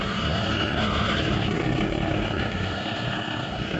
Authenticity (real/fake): fake